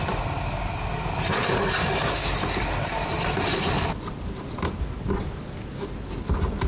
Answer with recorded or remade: recorded